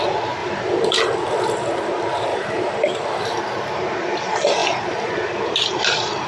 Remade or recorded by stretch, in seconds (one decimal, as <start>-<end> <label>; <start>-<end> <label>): 0.0-0.4 recorded; 0.4-1.0 remade; 1.0-2.3 recorded; 2.3-3.4 remade; 3.4-4.6 recorded; 4.6-5.8 remade; 5.8-6.3 recorded